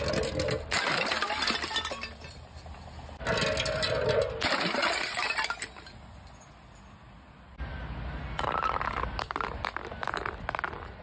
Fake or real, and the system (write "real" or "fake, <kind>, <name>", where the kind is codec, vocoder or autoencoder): real